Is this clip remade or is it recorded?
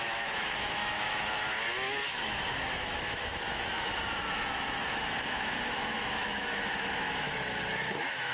remade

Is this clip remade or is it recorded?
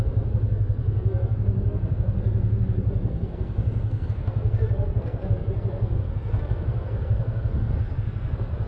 remade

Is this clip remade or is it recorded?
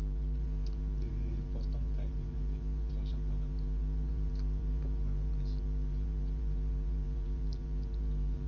remade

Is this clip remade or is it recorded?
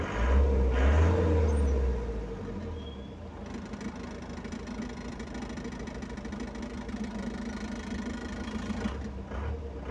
recorded